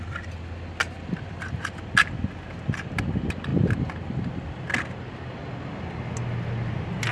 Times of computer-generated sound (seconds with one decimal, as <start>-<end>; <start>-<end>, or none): none